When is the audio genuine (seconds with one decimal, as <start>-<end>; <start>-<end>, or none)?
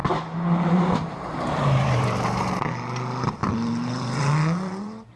2.5-3.4; 4.3-5.2